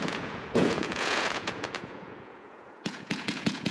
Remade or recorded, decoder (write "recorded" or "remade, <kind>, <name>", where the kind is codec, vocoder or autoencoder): remade, vocoder, Vocos